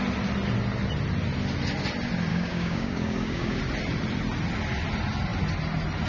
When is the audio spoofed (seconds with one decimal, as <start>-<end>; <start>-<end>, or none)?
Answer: 2.3-3.6

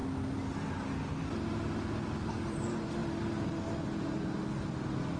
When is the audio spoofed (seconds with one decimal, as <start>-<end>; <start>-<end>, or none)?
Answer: none